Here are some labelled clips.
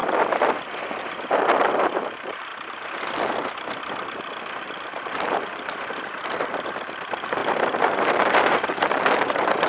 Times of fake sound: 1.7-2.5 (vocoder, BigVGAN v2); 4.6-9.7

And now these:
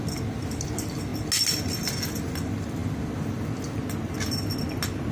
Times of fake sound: none